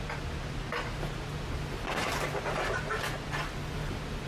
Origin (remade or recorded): recorded